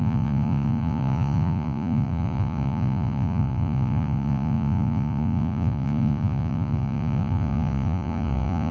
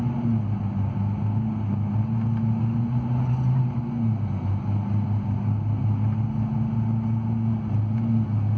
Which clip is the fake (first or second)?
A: first